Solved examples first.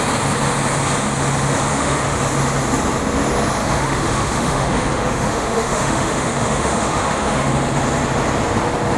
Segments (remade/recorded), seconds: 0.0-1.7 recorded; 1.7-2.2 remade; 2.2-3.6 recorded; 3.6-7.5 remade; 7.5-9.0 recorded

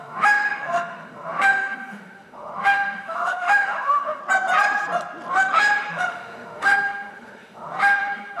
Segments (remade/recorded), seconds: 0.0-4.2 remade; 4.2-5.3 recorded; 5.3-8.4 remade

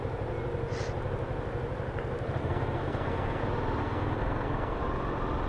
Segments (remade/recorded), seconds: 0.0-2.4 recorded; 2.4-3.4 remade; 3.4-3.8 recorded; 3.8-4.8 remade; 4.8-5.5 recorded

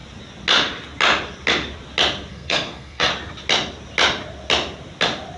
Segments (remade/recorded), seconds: 0.0-2.3 recorded; 2.3-3.1 remade; 3.1-5.4 recorded

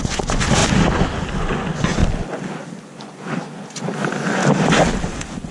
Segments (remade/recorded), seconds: 0.0-0.6 remade; 0.6-1.4 recorded; 1.4-2.0 remade; 2.0-2.8 recorded; 2.8-4.4 remade; 4.4-5.0 recorded; 5.0-5.5 remade

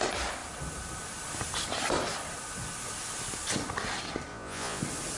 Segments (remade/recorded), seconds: 0.0-4.3 recorded; 4.3-4.8 remade; 4.8-5.2 recorded